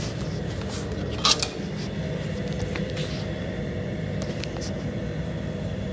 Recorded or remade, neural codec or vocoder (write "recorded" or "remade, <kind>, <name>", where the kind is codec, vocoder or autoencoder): recorded